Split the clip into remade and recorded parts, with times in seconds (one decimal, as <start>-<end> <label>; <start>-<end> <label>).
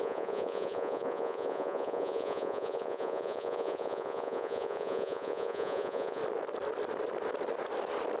0.0-6.2 remade; 6.2-8.2 recorded